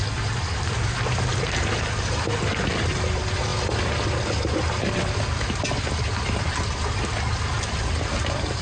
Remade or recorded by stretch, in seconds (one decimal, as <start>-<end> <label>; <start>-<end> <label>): 0.0-8.6 recorded

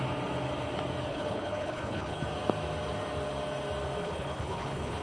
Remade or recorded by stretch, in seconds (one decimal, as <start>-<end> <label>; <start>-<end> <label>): 0.0-1.1 recorded; 1.1-2.2 remade; 2.2-4.0 recorded; 4.0-5.0 remade

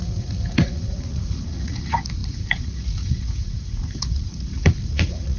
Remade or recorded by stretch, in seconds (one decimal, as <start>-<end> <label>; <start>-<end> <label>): 0.0-5.4 remade

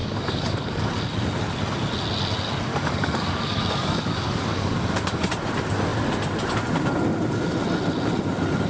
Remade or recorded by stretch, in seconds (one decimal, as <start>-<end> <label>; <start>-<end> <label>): 0.0-0.9 remade; 0.9-2.7 recorded; 2.7-5.3 remade; 5.3-8.7 recorded

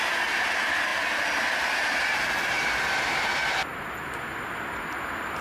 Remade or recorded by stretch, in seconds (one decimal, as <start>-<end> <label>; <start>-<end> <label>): 0.0-5.4 recorded

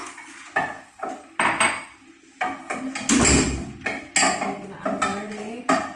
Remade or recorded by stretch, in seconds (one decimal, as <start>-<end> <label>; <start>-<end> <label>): 0.0-5.1 recorded; 5.1-6.0 remade

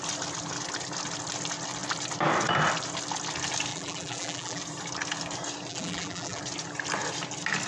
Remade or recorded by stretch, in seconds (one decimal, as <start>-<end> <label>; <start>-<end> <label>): 0.0-3.7 recorded; 3.7-4.6 remade; 4.6-5.7 recorded; 5.7-6.4 remade; 6.4-7.7 recorded